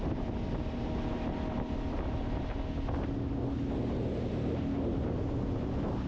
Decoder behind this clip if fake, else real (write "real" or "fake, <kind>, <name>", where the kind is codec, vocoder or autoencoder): real